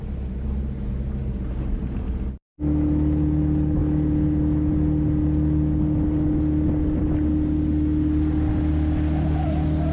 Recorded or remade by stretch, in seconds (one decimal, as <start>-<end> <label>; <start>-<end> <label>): 0.0-9.9 recorded